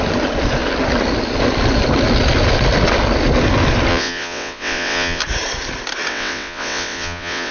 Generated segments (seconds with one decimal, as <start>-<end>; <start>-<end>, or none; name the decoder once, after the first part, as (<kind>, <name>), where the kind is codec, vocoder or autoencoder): 3.9-5.2 (vocoder, WaveNeXt); 6.1-7.5